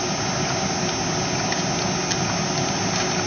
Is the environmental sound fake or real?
real